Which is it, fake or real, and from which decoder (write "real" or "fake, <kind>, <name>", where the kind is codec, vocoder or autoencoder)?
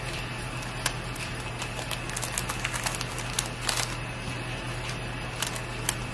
real